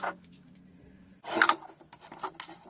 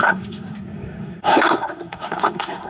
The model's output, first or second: second